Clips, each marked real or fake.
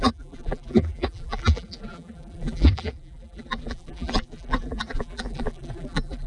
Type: fake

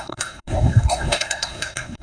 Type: fake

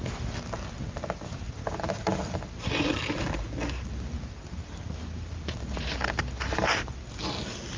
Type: real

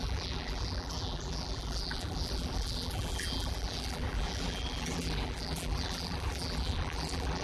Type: fake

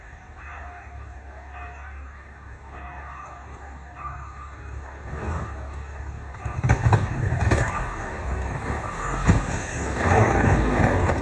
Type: fake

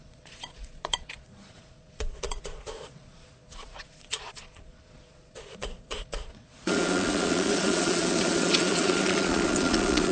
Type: fake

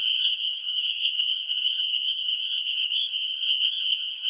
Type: fake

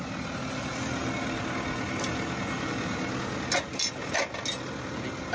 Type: real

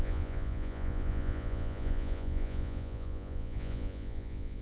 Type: fake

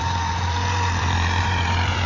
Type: fake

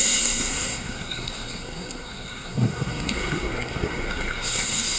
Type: fake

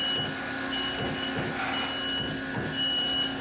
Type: real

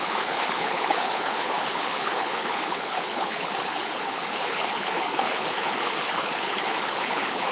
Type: fake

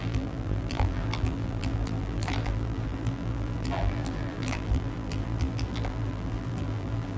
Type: fake